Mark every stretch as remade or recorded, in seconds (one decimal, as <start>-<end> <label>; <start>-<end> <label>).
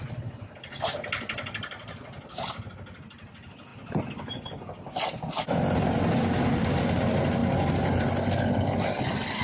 0.0-9.4 recorded